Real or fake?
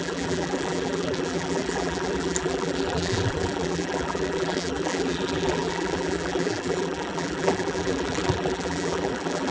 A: fake